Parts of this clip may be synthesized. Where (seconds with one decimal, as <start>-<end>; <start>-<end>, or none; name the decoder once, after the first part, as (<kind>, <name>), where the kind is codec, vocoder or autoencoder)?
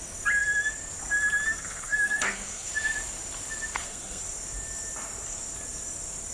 1.5-2.7 (codec, SNAC); 3.7-4.2